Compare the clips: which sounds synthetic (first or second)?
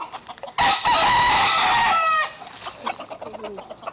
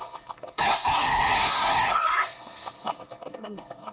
second